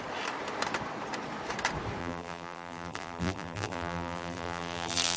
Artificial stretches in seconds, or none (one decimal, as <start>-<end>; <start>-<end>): 2.0-5.2